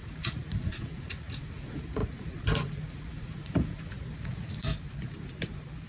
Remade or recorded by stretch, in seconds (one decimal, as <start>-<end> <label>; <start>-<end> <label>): 0.0-4.7 remade; 4.7-5.9 recorded